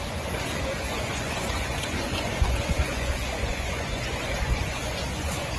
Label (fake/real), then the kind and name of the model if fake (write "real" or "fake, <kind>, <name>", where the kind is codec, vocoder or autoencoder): fake, vocoder, Vocos